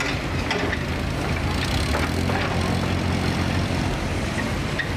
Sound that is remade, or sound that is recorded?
recorded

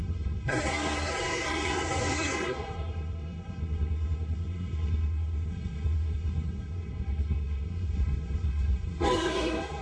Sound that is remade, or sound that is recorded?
remade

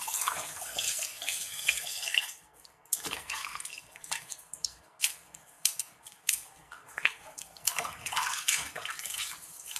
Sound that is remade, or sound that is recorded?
remade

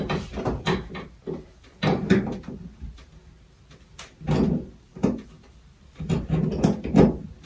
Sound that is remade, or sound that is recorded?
recorded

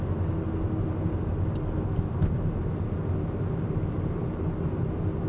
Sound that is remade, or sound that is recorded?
recorded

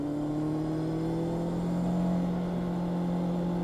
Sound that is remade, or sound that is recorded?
recorded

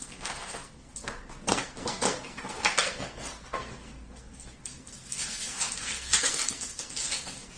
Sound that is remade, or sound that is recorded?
remade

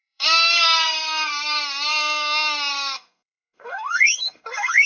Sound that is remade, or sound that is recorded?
remade